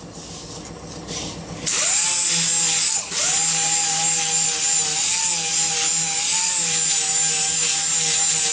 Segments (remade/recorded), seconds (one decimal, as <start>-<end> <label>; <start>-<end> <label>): 0.0-8.5 recorded